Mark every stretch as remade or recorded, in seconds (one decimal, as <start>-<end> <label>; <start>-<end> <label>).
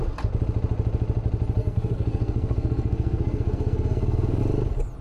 0.0-1.6 recorded; 1.6-4.4 remade; 4.4-5.0 recorded